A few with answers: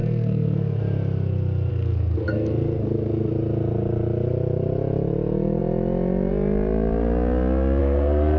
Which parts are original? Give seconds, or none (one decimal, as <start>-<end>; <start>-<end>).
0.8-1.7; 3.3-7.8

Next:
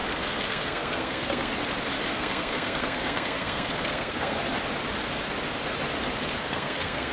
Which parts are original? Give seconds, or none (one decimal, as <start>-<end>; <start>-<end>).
1.5-2.1; 4.4-6.4

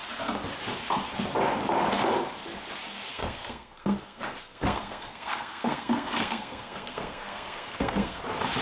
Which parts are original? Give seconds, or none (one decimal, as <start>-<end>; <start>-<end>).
0.0-3.1; 8.2-8.6